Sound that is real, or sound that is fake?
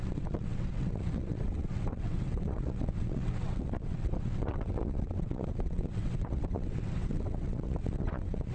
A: fake